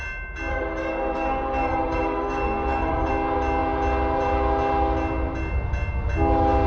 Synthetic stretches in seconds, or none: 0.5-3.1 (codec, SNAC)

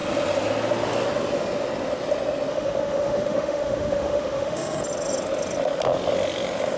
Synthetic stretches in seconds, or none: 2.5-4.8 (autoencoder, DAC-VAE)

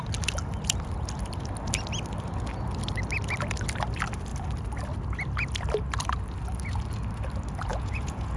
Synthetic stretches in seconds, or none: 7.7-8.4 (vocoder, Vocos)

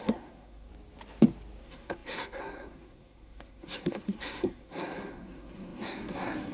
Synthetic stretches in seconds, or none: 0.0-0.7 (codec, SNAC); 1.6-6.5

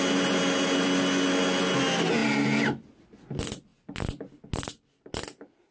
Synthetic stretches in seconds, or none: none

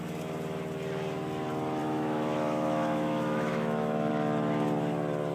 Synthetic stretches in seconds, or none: 1.8-4.1 (autoencoder, DAC-VAE)

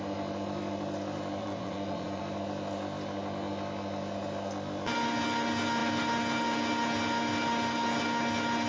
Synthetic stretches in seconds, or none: 1.4-2.2 (vocoder, Vocos)

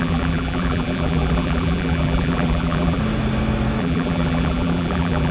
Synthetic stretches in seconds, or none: 0.0-3.0 (vocoder, BigVGAN v2); 3.8-5.3